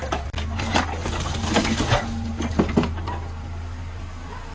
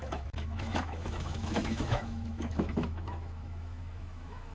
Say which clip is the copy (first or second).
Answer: second